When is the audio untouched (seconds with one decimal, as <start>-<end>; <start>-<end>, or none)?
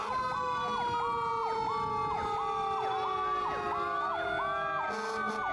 0.0-5.5